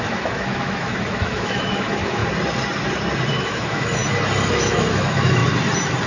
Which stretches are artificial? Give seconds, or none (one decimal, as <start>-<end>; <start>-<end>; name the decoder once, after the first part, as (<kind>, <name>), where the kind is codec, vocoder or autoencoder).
0.0-2.2 (autoencoder, DAC-VAE); 3.3-4.0; 4.5-5.4